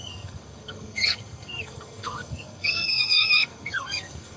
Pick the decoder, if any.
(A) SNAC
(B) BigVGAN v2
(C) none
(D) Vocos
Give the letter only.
A